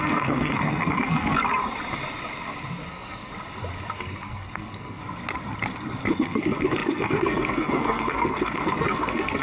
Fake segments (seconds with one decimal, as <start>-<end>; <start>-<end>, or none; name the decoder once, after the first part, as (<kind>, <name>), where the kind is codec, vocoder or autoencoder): 0.0-1.4 (codec, SNAC); 2.9-3.3; 3.9-5.0; 6.1-9.4

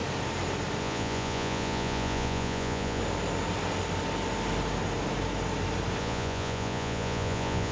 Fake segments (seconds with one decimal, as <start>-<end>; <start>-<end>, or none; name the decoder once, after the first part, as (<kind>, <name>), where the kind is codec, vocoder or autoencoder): 0.8-3.0 (vocoder, Vocos); 6.0-7.7

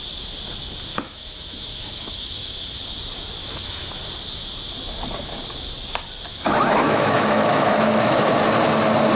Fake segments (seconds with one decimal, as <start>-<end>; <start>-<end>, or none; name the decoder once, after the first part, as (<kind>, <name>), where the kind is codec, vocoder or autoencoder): 0.9-2.8 (autoencoder, DAC-VAE); 3.4-4.0; 6.3-8.3

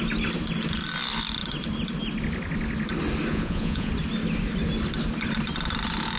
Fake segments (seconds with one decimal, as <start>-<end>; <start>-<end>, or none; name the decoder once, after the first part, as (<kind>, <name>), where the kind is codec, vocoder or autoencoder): 3.3-3.9 (vocoder, Vocos)

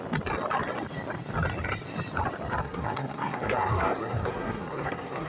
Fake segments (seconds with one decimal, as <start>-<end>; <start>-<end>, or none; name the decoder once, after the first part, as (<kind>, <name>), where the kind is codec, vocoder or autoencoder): 2.6-5.3 (codec, SNAC)

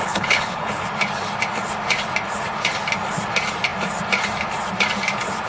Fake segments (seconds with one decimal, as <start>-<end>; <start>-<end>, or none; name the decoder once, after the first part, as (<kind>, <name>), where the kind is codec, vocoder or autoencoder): 0.0-0.8 (codec, HILCodec)